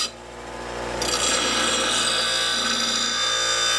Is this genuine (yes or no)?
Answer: yes